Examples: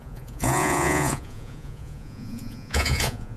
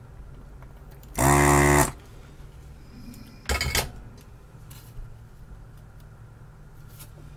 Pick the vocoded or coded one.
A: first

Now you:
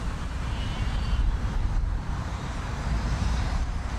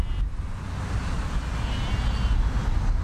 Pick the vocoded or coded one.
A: first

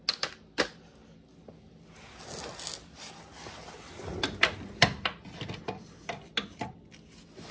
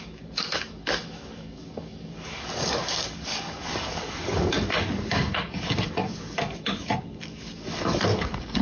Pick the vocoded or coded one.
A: second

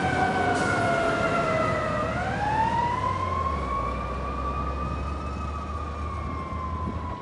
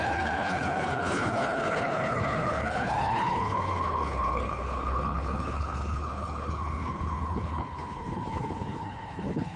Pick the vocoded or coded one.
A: second